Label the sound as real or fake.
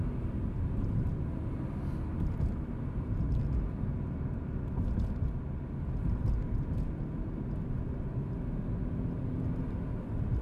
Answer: real